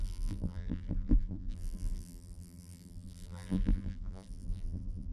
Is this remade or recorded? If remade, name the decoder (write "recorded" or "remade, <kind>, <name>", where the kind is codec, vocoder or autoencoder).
remade, vocoder, BigVGAN v2